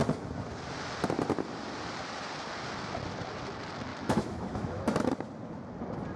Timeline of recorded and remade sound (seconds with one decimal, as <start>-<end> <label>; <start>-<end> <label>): 0.0-3.9 recorded; 3.9-5.1 remade; 5.1-6.2 recorded